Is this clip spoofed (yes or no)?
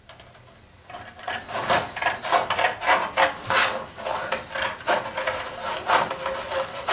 no